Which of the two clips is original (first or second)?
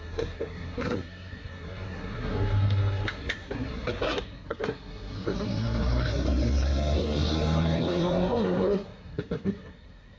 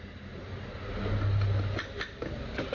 second